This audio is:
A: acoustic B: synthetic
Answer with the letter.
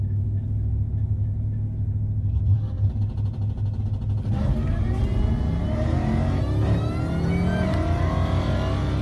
A